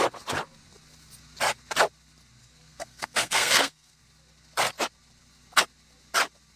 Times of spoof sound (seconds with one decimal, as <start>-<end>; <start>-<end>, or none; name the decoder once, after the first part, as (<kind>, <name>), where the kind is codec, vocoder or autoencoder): 2.4-4.0 (codec, SNAC)